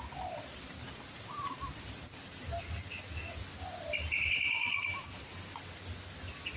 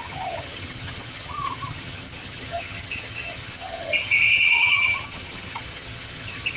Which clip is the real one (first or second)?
first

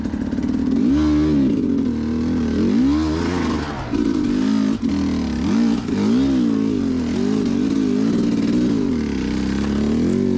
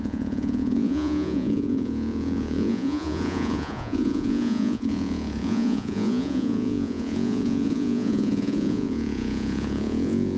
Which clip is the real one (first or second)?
first